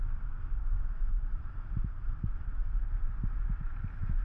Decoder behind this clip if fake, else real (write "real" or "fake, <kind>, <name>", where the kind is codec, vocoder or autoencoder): fake, vocoder, BigVGAN v2